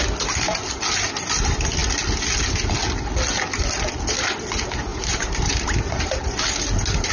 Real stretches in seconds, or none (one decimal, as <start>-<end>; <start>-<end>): 0.0-4.9; 6.1-7.1

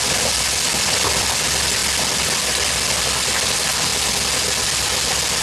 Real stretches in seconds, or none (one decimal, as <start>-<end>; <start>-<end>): 0.0-5.4